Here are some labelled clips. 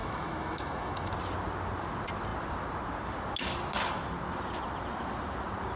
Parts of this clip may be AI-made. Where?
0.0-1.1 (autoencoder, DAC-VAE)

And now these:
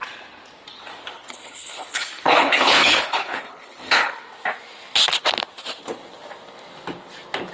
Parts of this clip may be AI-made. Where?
1.1-4.2 (codec, HILCodec)

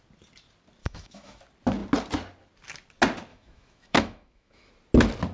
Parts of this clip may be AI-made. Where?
0.8-1.4 (autoencoder, DAC-VAE); 3.3-4.7

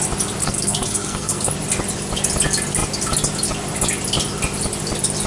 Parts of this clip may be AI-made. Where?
0.4-1.5 (codec, SNAC)

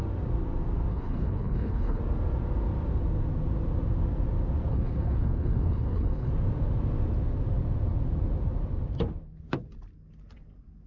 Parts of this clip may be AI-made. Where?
0.9-2.0 (codec, HILCodec); 4.7-6.3

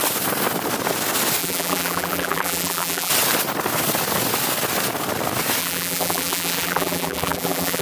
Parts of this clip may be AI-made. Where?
1.4-3.1 (vocoder, BigVGAN v2); 5.6-7.8

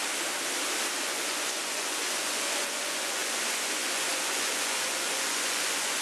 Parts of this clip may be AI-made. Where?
1.0-6.0 (vocoder, Vocos)